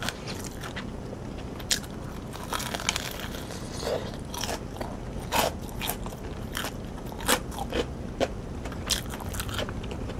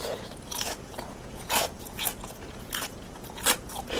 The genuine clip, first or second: first